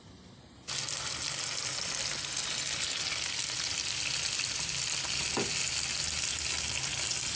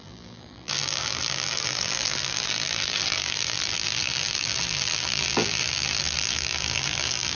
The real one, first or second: first